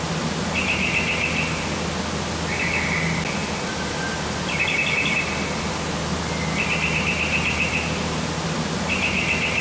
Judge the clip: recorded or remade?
recorded